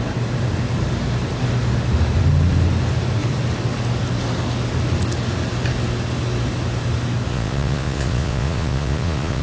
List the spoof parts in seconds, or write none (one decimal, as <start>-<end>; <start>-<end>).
7.3-9.4